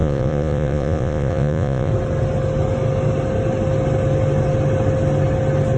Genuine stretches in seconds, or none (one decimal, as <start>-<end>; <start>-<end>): 1.9-5.8